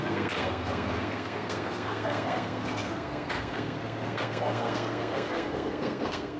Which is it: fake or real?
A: fake